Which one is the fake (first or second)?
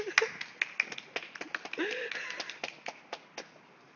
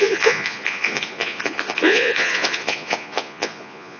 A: second